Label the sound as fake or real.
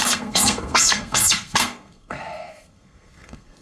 fake